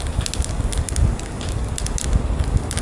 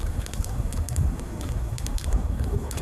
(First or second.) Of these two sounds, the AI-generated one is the second